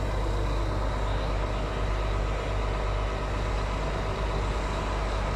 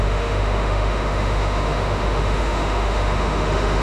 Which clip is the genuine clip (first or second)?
first